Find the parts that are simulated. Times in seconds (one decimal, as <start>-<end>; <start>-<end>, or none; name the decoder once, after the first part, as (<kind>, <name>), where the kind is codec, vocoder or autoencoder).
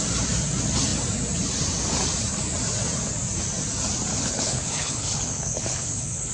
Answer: 4.1-6.3 (codec, HILCodec)